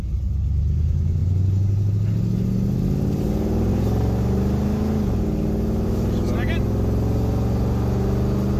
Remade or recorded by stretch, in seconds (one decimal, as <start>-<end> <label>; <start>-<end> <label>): 0.0-8.6 recorded